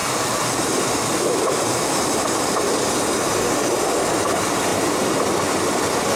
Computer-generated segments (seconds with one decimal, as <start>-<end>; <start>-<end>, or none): 0.0-2.7